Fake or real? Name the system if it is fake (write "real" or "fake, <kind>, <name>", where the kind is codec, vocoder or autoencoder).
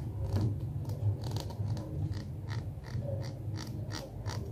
real